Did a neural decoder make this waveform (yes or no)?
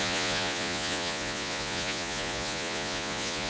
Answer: yes